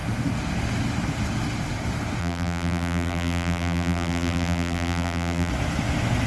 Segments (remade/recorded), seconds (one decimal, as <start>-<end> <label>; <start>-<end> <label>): 0.0-2.2 recorded; 2.2-5.5 remade; 5.5-6.3 recorded